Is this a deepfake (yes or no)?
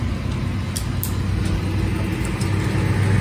no